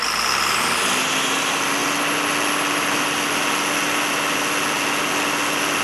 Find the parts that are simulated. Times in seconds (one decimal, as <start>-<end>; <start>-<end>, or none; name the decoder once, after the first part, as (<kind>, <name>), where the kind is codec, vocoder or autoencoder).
none